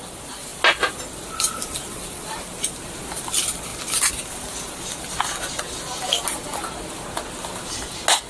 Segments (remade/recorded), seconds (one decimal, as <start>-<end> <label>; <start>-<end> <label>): 0.0-8.3 recorded